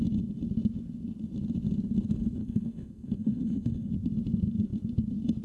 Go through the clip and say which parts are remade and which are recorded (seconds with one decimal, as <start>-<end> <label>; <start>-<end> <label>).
0.0-2.4 recorded; 2.4-3.9 remade; 3.9-5.4 recorded